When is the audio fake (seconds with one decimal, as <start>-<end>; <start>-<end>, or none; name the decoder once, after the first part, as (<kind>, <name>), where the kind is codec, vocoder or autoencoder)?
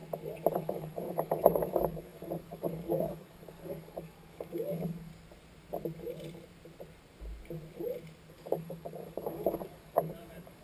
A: 0.5-5.1 (codec, DAC); 8.3-10.6